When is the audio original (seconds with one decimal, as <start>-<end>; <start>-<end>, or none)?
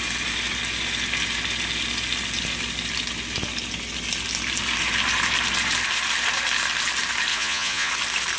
0.0-7.3; 7.9-8.4